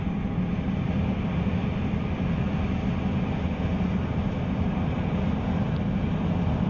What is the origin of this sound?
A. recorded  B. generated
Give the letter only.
A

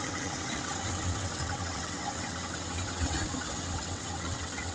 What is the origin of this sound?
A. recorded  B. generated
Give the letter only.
B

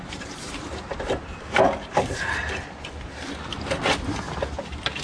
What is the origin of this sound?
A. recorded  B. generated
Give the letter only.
A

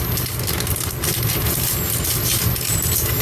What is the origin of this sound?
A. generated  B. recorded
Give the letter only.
B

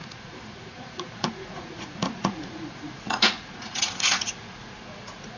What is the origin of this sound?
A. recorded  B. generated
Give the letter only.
B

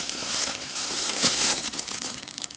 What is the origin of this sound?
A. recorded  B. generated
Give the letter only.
B